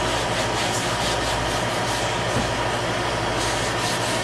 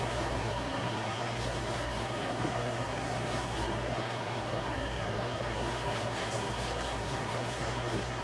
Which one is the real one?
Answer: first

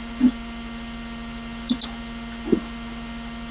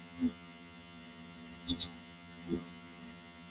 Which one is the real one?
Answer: first